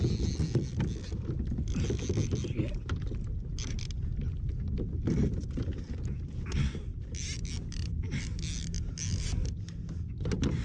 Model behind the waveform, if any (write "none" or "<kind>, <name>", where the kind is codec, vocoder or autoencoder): none